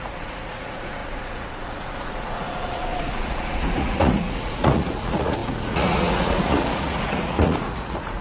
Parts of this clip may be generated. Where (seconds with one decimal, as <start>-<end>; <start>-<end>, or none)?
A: 0.0-8.2